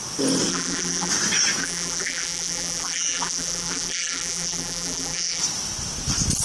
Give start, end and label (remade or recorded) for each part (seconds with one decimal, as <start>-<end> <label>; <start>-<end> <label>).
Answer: 0.0-0.5 recorded; 0.5-1.1 remade; 1.1-1.6 recorded; 1.6-5.4 remade; 5.4-6.4 recorded